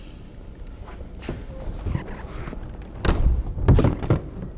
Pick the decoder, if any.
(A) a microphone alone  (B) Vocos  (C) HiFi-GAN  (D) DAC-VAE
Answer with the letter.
A